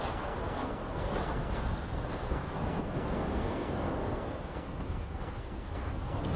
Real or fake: fake